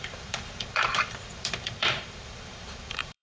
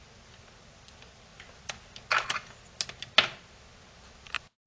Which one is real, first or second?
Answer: second